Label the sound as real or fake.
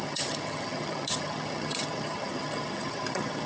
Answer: fake